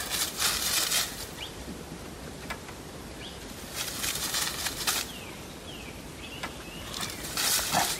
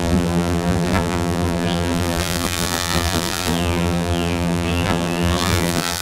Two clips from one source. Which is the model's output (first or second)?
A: second